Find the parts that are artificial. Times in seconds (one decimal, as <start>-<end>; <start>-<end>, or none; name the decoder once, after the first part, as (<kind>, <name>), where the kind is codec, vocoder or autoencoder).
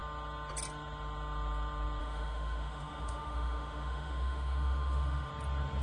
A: 2.0-5.3 (autoencoder, DAC-VAE)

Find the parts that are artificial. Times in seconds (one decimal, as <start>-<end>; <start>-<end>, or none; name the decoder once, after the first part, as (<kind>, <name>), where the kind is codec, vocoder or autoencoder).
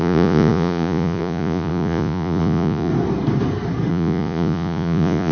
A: 0.0-2.9 (vocoder, Vocos); 3.9-5.3